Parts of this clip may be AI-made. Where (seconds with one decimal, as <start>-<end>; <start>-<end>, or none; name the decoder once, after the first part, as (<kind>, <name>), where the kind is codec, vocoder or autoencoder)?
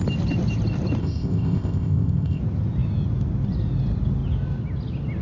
1.0-2.4 (codec, ZipCodec)